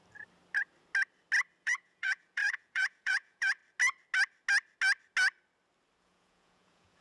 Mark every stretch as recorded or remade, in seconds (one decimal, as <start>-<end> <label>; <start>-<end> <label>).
0.0-1.6 recorded; 1.6-3.6 remade; 3.6-6.0 recorded; 6.0-7.0 remade